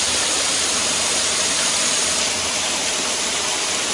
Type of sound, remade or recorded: recorded